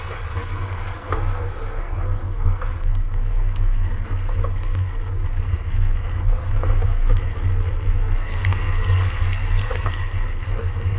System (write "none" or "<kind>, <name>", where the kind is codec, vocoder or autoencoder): codec, SNAC